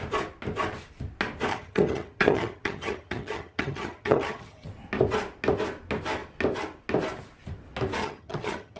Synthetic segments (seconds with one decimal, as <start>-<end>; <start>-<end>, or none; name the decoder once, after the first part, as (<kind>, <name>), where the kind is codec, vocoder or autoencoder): 1.5-4.7 (vocoder, HiFi-GAN); 8.0-8.8